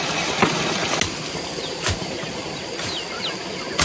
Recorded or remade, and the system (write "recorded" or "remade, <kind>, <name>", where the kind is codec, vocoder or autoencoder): recorded